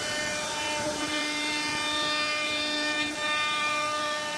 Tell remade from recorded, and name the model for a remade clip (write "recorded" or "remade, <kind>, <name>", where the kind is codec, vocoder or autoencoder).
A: remade, vocoder, BigVGAN v2